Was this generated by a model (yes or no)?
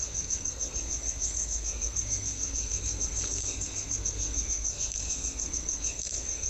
yes